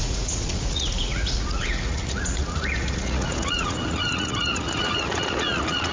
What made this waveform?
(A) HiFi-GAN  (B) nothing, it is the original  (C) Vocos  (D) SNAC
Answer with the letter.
C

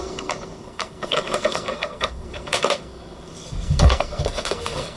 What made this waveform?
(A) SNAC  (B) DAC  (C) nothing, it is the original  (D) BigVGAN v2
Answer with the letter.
A